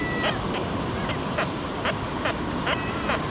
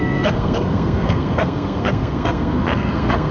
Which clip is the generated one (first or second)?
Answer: second